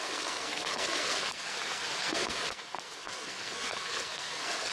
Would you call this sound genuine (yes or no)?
no